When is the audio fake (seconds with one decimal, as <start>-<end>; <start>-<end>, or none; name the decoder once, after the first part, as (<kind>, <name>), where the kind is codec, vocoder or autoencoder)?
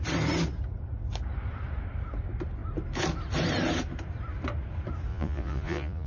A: 5.1-6.1 (vocoder, Vocos)